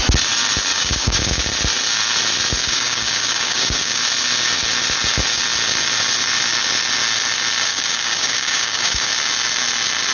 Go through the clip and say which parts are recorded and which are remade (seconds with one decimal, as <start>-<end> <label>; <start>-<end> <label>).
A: 0.0-0.7 recorded; 0.7-1.4 remade; 1.4-2.6 recorded; 2.6-4.0 remade; 4.0-7.7 recorded; 7.7-9.1 remade; 9.1-10.1 recorded